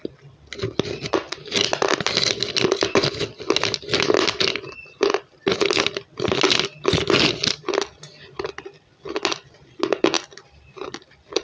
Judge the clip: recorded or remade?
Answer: recorded